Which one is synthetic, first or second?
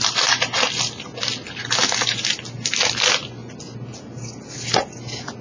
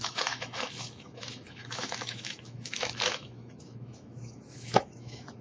second